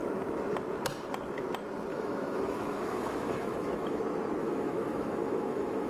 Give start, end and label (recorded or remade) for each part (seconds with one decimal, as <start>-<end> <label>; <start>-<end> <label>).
0.0-1.9 recorded; 1.9-4.0 remade; 4.0-4.4 recorded; 4.4-5.9 remade